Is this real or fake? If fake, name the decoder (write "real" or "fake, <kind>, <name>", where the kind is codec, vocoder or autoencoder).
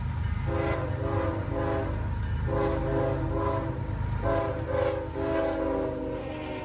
real